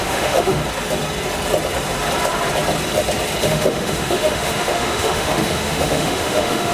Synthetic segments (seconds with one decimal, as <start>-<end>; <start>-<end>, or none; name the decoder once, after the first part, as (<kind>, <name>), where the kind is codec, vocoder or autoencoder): 0.0-0.6 (autoencoder, DAC-VAE); 3.4-6.7